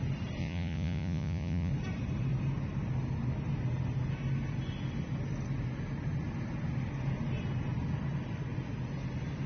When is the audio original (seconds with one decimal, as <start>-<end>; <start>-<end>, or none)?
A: 0.0-0.4; 1.7-9.5